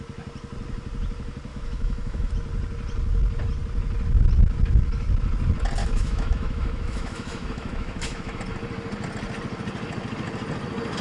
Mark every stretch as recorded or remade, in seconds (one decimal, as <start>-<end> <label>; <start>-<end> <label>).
0.0-1.5 recorded; 1.5-2.3 remade; 2.3-5.8 recorded; 5.8-8.4 remade; 8.4-11.0 recorded